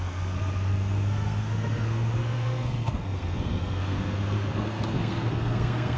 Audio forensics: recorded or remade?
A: remade